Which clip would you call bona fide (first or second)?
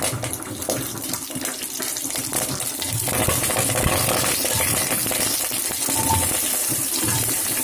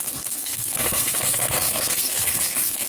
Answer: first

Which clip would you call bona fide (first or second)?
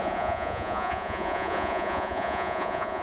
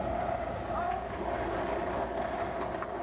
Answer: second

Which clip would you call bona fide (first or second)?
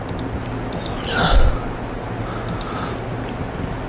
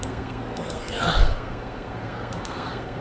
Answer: first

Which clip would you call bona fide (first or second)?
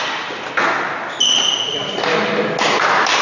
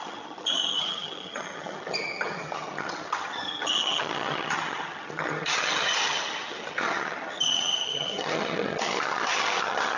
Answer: first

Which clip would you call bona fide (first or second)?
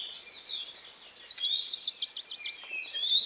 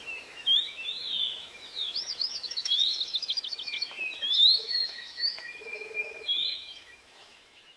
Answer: first